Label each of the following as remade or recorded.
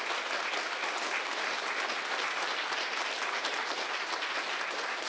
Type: recorded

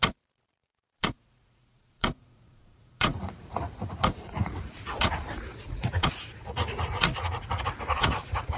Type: remade